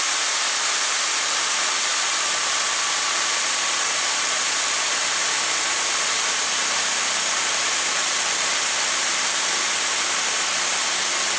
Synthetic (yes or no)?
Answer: yes